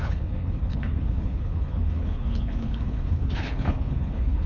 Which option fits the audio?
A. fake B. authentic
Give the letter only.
A